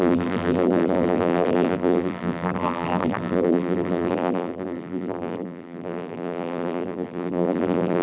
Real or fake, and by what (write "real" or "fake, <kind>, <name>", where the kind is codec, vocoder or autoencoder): fake, vocoder, BigVGAN v2